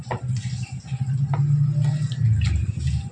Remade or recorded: recorded